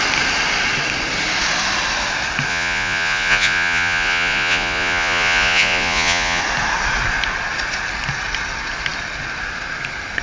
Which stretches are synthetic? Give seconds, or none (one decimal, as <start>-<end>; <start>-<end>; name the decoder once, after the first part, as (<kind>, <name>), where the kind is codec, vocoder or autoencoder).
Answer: 2.5-6.4 (vocoder, Vocos)